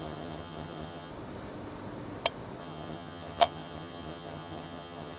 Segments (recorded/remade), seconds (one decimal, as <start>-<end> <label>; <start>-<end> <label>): 0.0-1.1 remade; 1.1-2.6 recorded; 2.6-5.2 remade

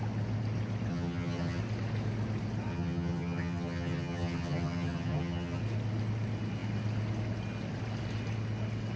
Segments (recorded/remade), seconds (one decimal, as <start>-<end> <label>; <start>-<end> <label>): 0.0-0.9 recorded; 0.9-1.6 remade; 1.6-2.7 recorded; 2.7-5.6 remade; 5.6-9.0 recorded

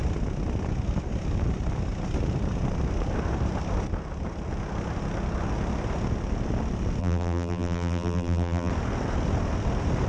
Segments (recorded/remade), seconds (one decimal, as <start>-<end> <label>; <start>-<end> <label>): 0.0-7.0 recorded; 7.0-8.7 remade; 8.7-10.1 recorded

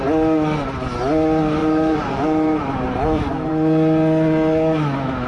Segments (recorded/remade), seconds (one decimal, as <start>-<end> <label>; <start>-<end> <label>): 0.0-1.6 recorded; 1.6-3.5 remade; 3.5-5.3 recorded

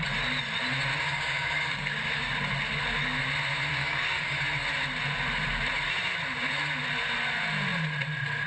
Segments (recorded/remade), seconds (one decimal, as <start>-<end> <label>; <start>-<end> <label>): 0.0-0.9 recorded; 0.9-2.3 remade; 2.3-3.7 recorded; 3.7-4.4 remade; 4.4-8.5 recorded

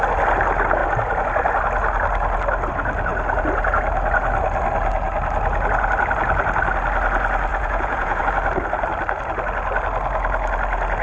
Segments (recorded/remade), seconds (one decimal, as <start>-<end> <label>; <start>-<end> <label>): 0.0-7.5 recorded; 7.5-8.2 remade; 8.2-11.0 recorded

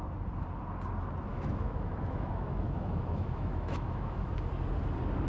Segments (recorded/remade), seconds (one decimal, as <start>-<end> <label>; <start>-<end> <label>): 0.0-1.3 recorded; 1.3-4.5 remade; 4.5-5.3 recorded